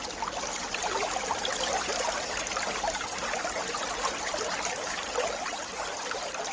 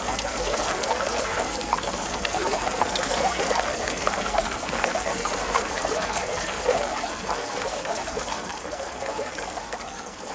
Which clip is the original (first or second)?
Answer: first